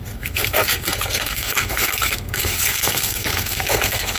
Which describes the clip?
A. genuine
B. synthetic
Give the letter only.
B